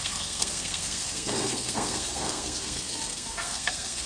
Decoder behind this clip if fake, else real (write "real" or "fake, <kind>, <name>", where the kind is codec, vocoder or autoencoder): fake, codec, SNAC